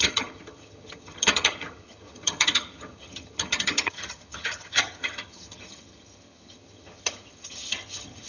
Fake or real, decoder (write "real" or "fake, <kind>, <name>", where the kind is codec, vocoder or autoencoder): fake, vocoder, HiFi-GAN